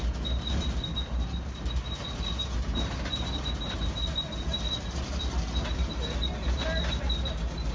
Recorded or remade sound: recorded